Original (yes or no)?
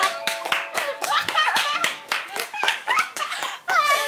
no